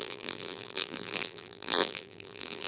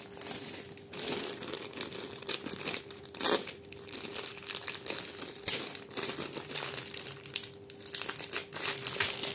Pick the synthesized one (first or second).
first